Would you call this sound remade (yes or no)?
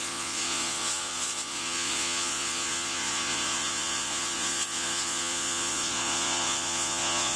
yes